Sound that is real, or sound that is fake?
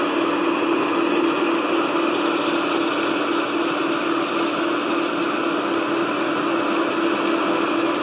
real